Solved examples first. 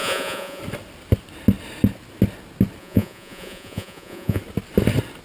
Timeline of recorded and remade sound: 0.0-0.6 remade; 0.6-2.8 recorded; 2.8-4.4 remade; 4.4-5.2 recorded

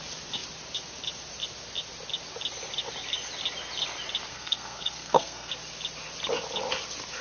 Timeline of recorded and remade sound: 0.0-4.3 recorded; 4.3-5.5 remade; 5.5-7.2 recorded